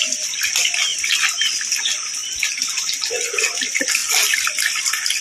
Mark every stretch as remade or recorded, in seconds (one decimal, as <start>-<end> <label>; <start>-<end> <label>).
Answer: 0.0-5.2 recorded